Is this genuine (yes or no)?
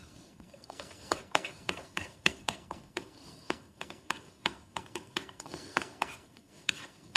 no